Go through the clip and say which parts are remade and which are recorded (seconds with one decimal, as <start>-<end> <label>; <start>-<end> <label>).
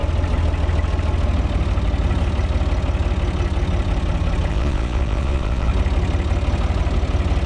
0.0-4.5 recorded; 4.5-5.7 remade; 5.7-7.5 recorded